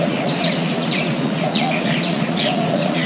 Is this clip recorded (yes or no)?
no